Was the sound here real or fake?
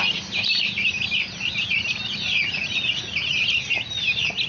real